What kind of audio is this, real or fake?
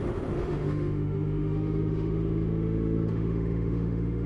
fake